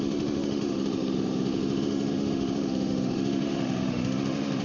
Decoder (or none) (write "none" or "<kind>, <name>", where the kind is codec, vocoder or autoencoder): autoencoder, DAC-VAE